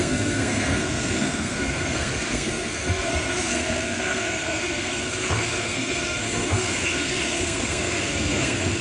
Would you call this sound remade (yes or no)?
yes